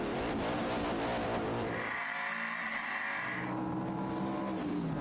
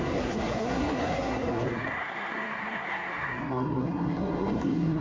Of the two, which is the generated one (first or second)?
second